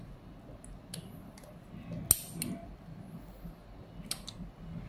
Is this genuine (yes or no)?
yes